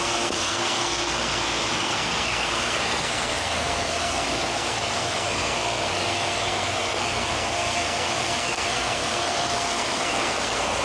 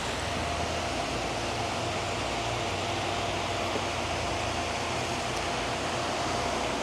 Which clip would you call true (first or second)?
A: second